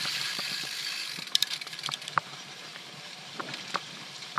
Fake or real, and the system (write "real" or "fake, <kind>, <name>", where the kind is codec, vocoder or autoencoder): fake, vocoder, BigVGAN v2